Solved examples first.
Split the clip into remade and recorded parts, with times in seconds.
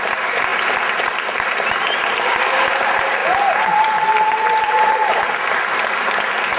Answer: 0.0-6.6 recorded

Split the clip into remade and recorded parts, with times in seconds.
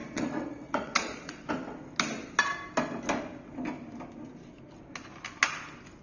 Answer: 0.0-1.5 remade; 1.5-6.0 recorded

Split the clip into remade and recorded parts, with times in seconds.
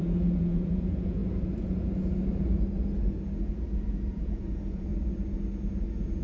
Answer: 0.0-1.2 remade; 1.2-3.1 recorded; 3.1-4.9 remade; 4.9-6.2 recorded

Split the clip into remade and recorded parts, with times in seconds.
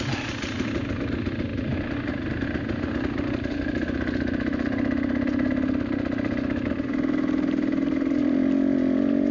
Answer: 0.0-9.3 recorded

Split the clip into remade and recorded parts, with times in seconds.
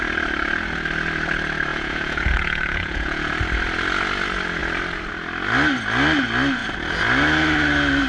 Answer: 0.0-1.7 recorded; 1.7-3.3 remade; 3.3-8.1 recorded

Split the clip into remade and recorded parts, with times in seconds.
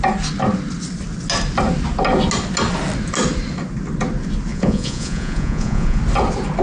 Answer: 0.0-4.5 recorded; 4.5-6.0 remade; 6.0-6.6 recorded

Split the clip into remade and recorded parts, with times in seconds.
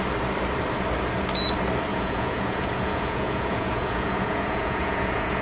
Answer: 0.0-1.9 recorded; 1.9-5.4 remade